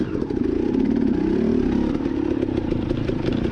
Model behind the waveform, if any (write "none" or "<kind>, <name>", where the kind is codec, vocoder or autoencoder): vocoder, BigVGAN v2